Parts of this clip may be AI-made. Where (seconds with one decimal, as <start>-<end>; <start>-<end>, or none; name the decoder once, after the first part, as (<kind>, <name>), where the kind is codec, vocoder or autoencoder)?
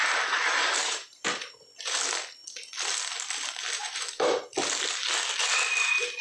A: 0.8-1.5 (vocoder, BigVGAN v2); 3.8-4.4